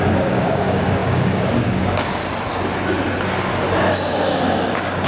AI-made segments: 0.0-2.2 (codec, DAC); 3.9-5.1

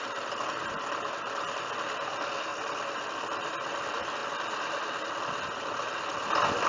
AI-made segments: none

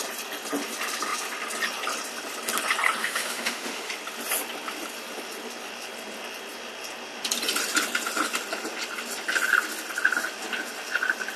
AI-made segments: 3.0-3.9 (autoencoder, DAC-VAE)

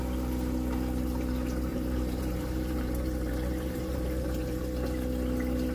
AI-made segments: 1.7-4.6 (vocoder, BigVGAN v2)

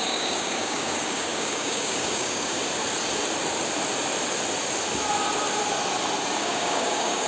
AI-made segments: 0.0-2.6 (codec, DAC); 6.4-7.3

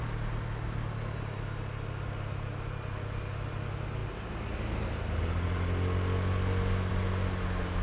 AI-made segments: none

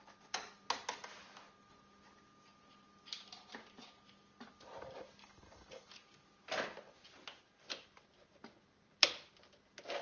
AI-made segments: 5.2-5.9 (codec, HILCodec)